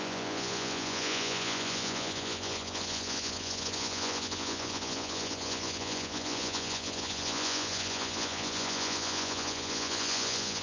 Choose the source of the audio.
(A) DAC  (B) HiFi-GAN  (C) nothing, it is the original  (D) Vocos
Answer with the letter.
D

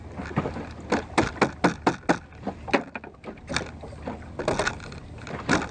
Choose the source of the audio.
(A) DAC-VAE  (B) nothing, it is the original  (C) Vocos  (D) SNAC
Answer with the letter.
B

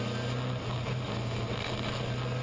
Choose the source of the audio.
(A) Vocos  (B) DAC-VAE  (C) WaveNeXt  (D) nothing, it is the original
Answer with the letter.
D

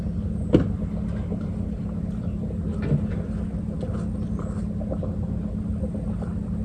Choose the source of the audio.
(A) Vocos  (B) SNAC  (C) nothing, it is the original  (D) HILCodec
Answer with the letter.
C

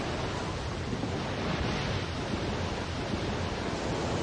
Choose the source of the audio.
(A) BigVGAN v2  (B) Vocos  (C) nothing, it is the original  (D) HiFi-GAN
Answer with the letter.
C